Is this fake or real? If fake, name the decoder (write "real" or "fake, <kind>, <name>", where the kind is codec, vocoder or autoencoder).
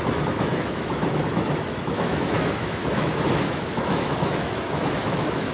fake, autoencoder, DAC-VAE